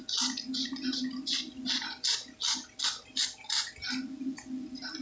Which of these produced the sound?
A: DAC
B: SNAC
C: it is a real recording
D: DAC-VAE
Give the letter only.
C